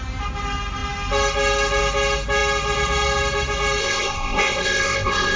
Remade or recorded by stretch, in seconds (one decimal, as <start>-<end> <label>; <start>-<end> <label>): 0.0-3.8 recorded; 3.8-5.4 remade